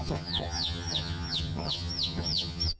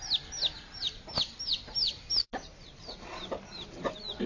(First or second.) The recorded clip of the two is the second